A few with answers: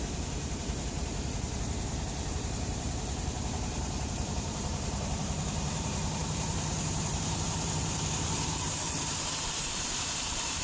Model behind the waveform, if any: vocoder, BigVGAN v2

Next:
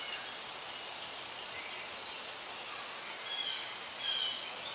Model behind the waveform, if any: none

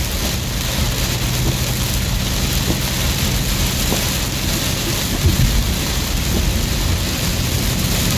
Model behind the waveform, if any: none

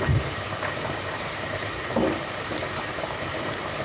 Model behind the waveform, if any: vocoder, BigVGAN v2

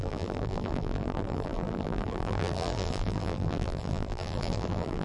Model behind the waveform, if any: vocoder, BigVGAN v2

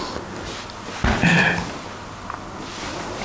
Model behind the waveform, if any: none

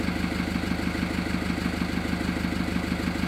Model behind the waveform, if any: none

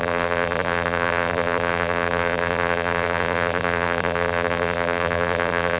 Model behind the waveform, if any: vocoder, BigVGAN v2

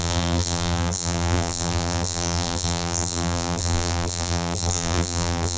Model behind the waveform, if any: vocoder, BigVGAN v2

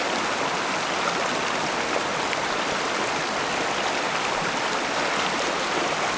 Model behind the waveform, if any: none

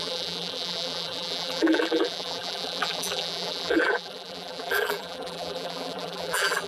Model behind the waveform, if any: vocoder, BigVGAN v2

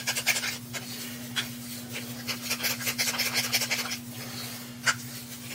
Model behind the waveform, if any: none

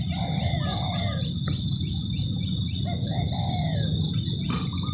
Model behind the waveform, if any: none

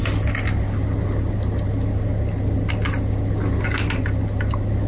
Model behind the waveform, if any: none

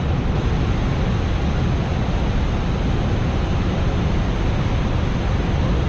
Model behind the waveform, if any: none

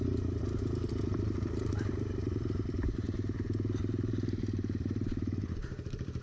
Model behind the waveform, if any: vocoder, BigVGAN v2